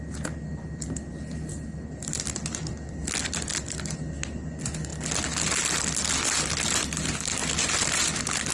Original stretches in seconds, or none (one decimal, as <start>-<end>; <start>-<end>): 0.0-8.5